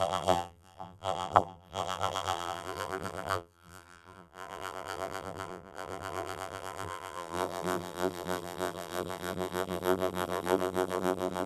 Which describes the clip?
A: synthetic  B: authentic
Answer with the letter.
A